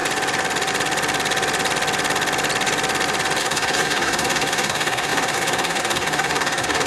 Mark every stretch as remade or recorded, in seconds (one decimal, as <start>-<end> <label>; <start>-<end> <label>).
0.0-3.4 recorded; 3.4-6.9 remade